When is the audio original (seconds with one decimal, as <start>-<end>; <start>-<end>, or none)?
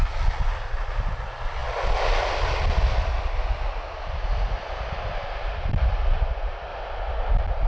0.0-7.7